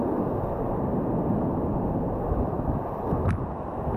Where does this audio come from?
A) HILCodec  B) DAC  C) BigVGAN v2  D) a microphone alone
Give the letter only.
D